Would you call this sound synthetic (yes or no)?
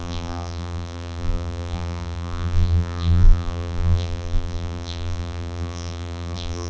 yes